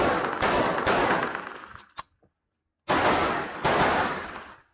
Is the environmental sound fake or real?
real